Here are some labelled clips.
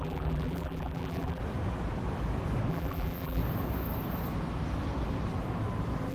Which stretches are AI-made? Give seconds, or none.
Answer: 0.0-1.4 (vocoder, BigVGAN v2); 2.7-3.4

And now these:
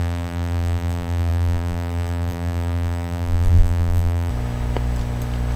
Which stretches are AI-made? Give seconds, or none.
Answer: 0.0-4.3 (vocoder, BigVGAN v2)

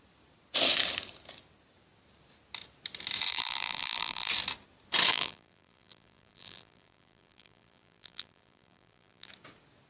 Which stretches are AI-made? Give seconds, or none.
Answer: 3.3-4.3 (vocoder, BigVGAN v2); 5.1-9.3

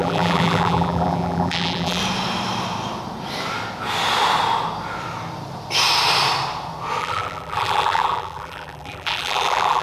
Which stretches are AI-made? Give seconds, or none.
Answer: 0.0-2.0 (vocoder, BigVGAN v2); 7.0-9.8

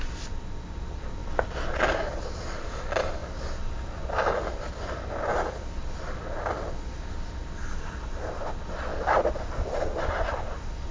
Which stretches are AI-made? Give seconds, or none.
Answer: 1.2-1.8 (vocoder, BigVGAN v2)

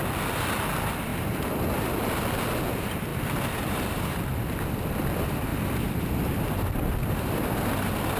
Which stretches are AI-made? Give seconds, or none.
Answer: 1.1-2.2 (vocoder, BigVGAN v2); 3.1-4.2; 5.5-6.9